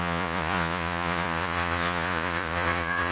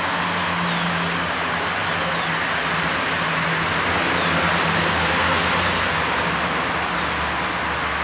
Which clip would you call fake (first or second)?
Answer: first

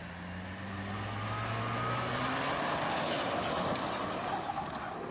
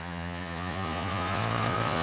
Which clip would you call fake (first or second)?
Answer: second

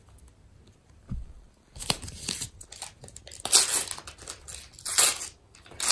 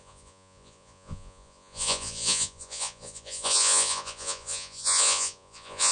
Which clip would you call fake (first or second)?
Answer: second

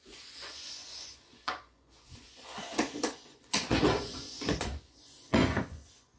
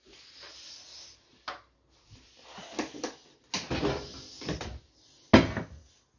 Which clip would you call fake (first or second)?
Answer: first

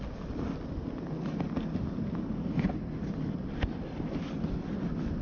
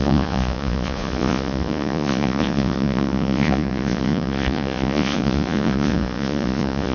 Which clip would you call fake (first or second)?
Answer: second